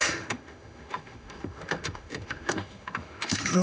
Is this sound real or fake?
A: fake